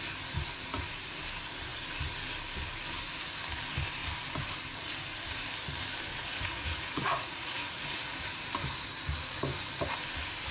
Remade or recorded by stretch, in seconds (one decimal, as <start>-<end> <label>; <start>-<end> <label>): 0.0-6.1 recorded; 6.1-8.2 remade; 8.2-10.5 recorded